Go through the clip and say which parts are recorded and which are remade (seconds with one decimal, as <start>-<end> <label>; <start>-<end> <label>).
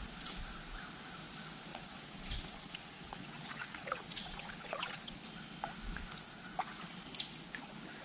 0.0-1.7 recorded; 1.7-5.2 remade; 5.2-8.0 recorded